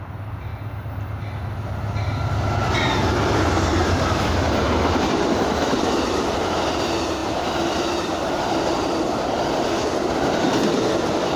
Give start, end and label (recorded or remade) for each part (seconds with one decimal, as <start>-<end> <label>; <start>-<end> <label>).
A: 0.0-0.5 remade; 0.5-5.0 recorded; 5.0-11.4 remade